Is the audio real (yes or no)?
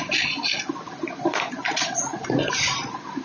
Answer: yes